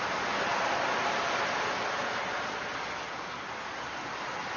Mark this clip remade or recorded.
recorded